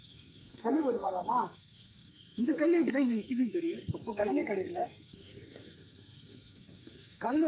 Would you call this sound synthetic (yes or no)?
yes